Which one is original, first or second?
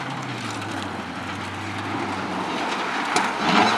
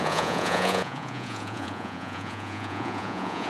first